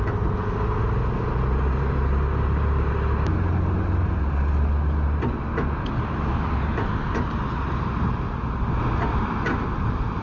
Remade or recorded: recorded